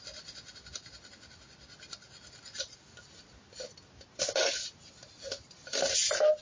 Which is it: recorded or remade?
recorded